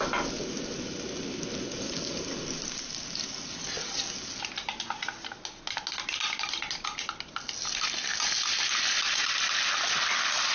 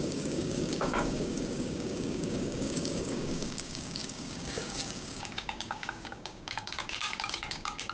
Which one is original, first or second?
first